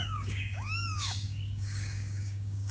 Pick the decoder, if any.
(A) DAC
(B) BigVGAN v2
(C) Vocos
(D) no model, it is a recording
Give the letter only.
A